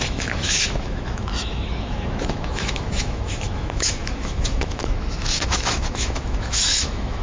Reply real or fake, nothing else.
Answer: fake